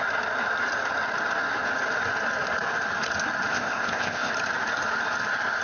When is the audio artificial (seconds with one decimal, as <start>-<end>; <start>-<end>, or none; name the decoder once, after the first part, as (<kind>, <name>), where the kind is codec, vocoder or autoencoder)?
3.5-4.3 (codec, ZipCodec)